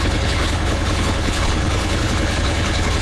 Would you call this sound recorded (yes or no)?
no